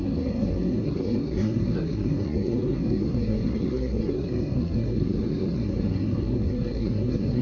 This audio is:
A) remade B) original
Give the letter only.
A